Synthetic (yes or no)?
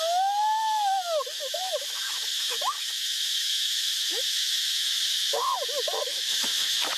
yes